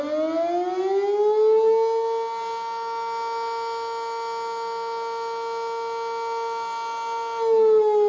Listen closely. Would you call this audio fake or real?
real